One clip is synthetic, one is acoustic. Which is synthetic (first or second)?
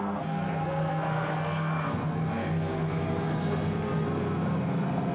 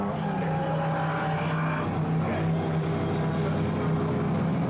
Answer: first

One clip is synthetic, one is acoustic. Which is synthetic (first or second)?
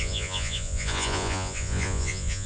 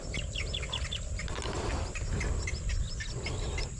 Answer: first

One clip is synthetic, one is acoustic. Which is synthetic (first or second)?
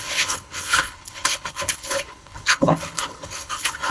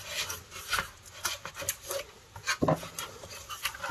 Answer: first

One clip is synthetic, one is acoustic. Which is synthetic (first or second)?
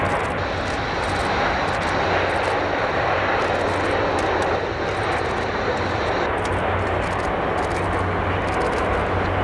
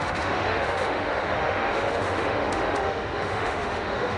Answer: second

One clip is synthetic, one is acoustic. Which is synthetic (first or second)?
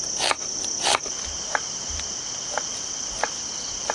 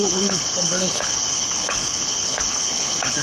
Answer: second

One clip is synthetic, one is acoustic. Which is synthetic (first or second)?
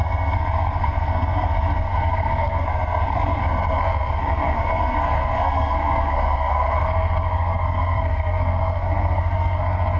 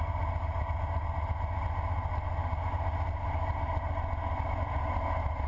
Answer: first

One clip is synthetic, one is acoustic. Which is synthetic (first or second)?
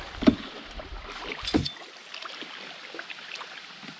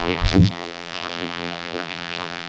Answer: second